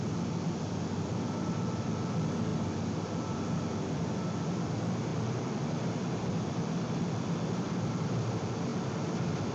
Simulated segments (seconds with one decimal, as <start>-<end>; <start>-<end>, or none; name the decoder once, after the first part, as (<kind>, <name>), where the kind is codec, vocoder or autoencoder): 0.0-9.5 (vocoder, BigVGAN v2)